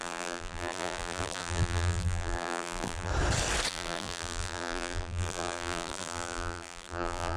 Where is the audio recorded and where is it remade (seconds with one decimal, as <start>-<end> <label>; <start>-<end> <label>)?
0.0-3.1 remade; 3.1-3.7 recorded; 3.7-7.4 remade